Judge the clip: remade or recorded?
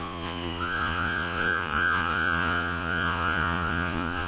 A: remade